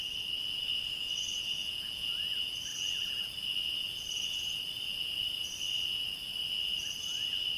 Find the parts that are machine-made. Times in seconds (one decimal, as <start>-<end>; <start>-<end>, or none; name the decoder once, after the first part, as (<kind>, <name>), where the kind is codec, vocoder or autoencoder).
1.6-2.1 (vocoder, Vocos)